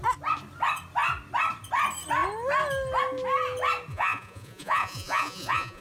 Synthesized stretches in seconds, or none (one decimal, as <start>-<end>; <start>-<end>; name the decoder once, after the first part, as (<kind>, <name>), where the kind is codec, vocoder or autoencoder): 3.9-5.8 (vocoder, Vocos)